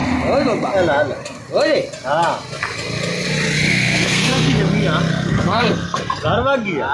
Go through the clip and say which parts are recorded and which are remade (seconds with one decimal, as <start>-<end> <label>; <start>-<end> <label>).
0.0-3.7 recorded; 3.7-4.6 remade; 4.6-5.1 recorded; 5.1-6.0 remade; 6.0-6.9 recorded